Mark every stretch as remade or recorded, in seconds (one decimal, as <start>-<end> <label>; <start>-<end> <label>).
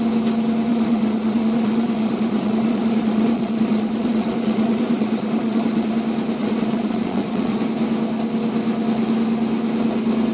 0.0-0.7 recorded; 0.7-5.9 remade; 5.9-6.4 recorded; 6.4-7.6 remade; 7.6-10.3 recorded